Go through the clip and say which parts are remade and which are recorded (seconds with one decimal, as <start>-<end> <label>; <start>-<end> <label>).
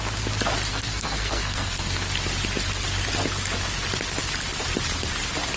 0.0-0.7 recorded; 0.7-2.1 remade; 2.1-5.6 recorded